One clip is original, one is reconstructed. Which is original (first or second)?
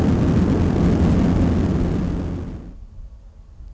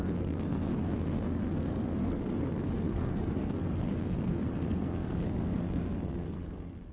first